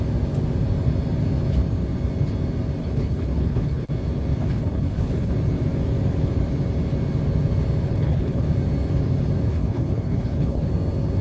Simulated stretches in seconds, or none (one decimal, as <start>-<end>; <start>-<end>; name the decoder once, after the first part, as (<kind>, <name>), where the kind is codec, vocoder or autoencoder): 2.8-3.9 (codec, HILCodec); 4.4-5.3; 7.9-8.5; 9.5-10.7